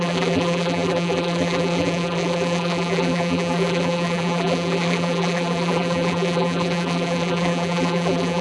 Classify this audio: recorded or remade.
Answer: remade